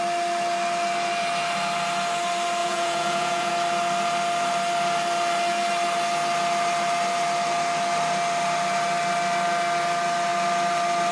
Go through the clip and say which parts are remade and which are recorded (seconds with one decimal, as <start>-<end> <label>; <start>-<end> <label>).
0.0-2.6 recorded; 2.6-3.5 remade; 3.5-11.1 recorded